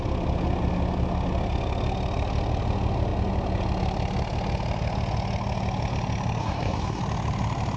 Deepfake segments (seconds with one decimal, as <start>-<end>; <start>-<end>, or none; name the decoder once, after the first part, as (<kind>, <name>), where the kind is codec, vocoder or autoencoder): 6.4-7.0 (codec, SNAC)